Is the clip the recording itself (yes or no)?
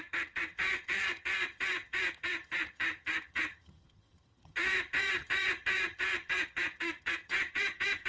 no